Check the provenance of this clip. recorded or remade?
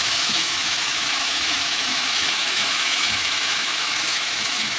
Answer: remade